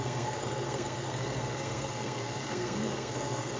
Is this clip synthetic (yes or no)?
yes